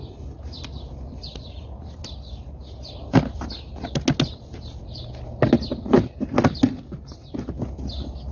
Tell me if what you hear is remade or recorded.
recorded